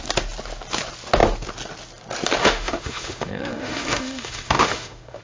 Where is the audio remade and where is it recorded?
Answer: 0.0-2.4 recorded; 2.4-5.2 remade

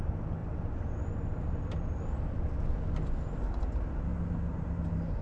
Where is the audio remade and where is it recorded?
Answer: 0.0-0.4 recorded; 0.4-2.8 remade; 2.8-5.2 recorded

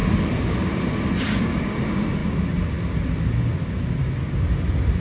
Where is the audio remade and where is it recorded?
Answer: 0.0-5.0 recorded

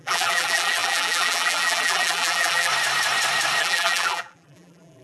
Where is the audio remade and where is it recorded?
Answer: 0.0-2.7 remade; 2.7-3.6 recorded; 3.6-5.0 remade

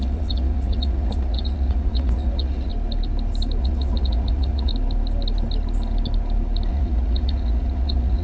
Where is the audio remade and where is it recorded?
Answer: 0.0-2.7 remade; 2.7-3.6 recorded; 3.6-4.7 remade; 4.7-6.7 recorded; 6.7-8.2 remade

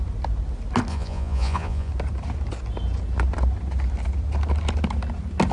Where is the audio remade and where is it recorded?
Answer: 0.0-0.9 recorded; 0.9-1.9 remade; 1.9-5.5 recorded